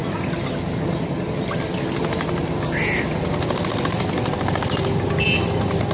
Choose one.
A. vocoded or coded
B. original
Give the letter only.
B